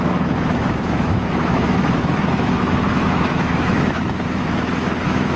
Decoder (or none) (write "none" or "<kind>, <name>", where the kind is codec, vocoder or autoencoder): autoencoder, DAC-VAE